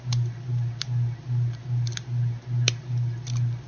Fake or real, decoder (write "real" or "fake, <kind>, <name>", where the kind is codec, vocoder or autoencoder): real